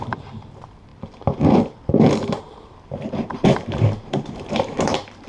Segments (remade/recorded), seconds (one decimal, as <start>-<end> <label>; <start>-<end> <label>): 0.0-5.3 remade